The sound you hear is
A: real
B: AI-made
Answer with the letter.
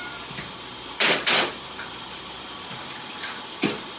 A